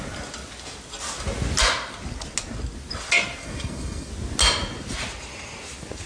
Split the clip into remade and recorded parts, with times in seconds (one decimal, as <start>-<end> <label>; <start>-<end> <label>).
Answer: 0.0-3.4 recorded; 3.4-4.1 remade; 4.1-6.1 recorded